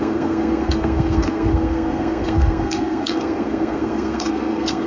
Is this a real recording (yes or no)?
no